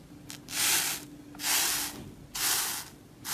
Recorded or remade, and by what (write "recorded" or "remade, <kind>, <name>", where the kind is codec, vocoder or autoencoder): recorded